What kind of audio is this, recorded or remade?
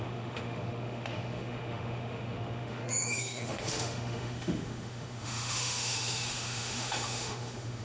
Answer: remade